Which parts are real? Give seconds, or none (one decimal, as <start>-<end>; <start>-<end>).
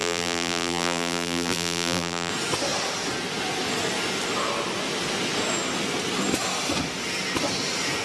2.3-8.0